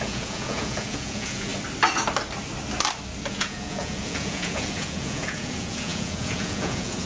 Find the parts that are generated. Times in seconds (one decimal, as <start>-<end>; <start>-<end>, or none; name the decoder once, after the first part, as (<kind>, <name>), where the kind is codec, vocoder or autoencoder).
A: 0.0-1.5 (vocoder, Vocos); 3.3-7.1